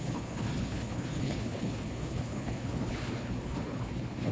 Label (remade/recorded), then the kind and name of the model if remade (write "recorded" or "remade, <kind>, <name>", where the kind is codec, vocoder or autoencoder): remade, codec, HILCodec